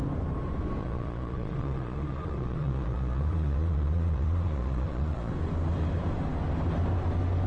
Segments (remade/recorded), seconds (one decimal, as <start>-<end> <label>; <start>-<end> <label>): 0.0-0.8 recorded; 0.8-5.3 remade; 5.3-7.5 recorded